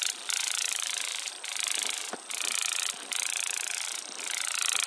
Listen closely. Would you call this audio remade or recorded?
recorded